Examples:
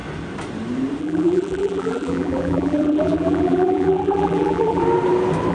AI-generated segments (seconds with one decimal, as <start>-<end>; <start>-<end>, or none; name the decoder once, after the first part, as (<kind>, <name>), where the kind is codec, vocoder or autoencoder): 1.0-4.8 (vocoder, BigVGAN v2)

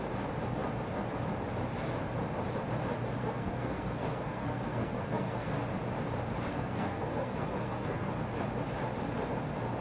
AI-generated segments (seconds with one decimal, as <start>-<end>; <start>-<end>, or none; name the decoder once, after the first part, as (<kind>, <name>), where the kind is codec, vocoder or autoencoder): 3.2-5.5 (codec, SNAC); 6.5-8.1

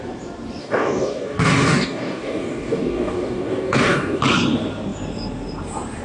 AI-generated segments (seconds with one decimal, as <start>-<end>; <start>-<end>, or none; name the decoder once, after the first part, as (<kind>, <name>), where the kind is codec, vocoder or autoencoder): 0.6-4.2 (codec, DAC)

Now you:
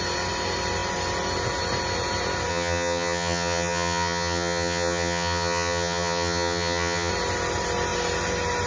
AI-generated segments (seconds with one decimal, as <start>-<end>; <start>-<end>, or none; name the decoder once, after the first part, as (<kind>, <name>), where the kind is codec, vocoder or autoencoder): 2.5-7.1 (vocoder, HiFi-GAN)